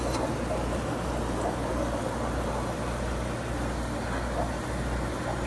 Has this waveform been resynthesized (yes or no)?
no